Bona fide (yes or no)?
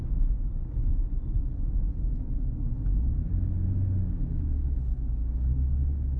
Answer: yes